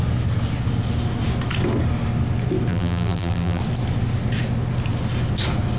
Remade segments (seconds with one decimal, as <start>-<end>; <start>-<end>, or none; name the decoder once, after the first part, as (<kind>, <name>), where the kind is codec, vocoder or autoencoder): 2.7-3.6 (vocoder, BigVGAN v2)